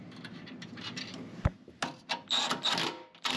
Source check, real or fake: real